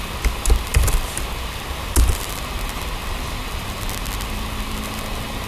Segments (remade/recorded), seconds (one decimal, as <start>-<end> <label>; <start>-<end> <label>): 0.0-5.5 recorded